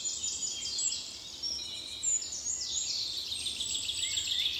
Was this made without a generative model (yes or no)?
yes